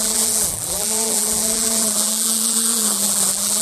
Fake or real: fake